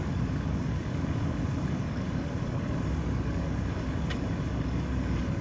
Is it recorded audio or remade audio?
remade